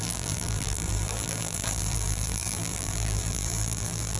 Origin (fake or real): fake